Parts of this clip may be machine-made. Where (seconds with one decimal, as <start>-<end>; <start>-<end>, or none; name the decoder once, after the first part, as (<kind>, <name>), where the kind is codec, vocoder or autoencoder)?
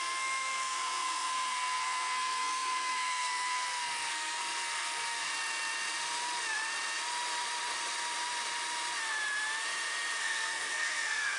0.0-5.3 (codec, SNAC); 10.2-11.4